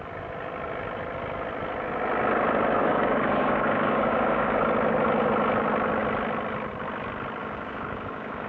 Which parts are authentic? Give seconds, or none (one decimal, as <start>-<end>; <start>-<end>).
0.0-2.8; 4.6-7.4

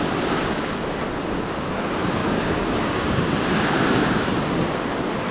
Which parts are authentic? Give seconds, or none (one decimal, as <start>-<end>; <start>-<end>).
0.0-2.2; 4.3-5.3

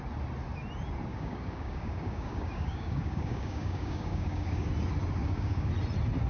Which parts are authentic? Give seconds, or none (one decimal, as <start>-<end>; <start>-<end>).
0.0-1.1; 4.7-5.2; 5.7-6.3

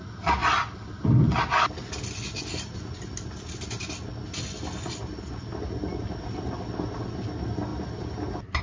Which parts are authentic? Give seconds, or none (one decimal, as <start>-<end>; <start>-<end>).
0.0-8.6

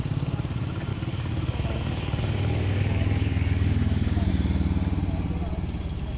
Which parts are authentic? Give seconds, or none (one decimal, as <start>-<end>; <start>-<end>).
0.0-0.9; 4.3-6.2

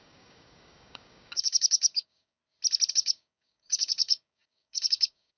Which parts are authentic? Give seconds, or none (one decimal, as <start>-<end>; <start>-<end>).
2.4-2.9